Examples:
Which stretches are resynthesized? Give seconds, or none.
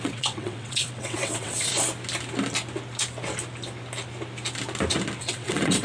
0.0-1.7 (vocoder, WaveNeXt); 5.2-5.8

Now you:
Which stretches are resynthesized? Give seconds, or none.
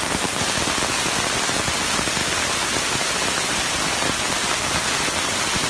none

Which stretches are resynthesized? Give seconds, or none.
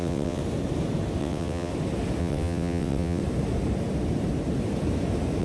0.0-0.4 (vocoder, WaveNeXt); 1.2-1.7; 2.2-3.2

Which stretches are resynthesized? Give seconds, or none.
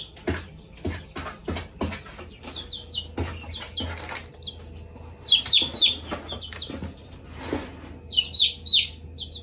none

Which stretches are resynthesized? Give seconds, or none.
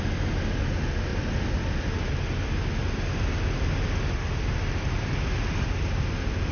none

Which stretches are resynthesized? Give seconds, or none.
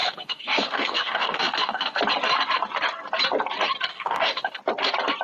0.0-2.0 (autoencoder, DAC-VAE); 3.9-4.6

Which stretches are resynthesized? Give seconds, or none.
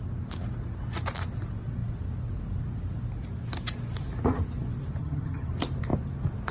5.0-5.5 (vocoder, HiFi-GAN)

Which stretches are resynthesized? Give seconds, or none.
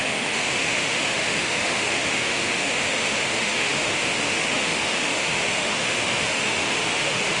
0.0-7.4 (autoencoder, DAC-VAE)